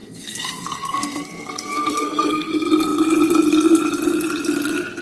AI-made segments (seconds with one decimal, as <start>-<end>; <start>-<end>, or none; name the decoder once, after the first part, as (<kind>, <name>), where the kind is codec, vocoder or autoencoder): 0.0-2.5 (codec, SNAC)